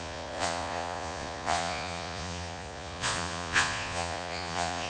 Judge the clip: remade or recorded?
remade